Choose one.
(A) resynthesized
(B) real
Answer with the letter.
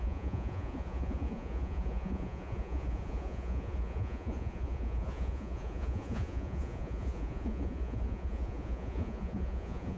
A